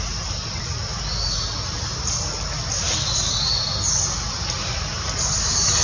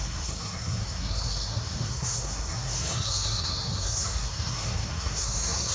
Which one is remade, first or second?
second